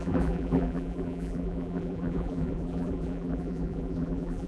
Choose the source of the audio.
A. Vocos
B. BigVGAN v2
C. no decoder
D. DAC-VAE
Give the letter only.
B